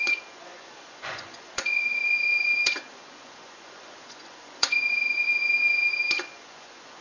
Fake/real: fake